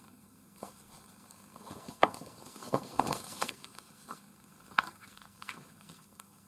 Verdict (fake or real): fake